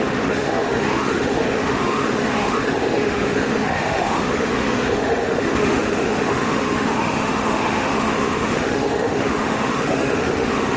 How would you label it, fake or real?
fake